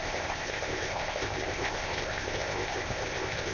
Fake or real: fake